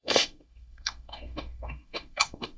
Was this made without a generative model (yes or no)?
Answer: no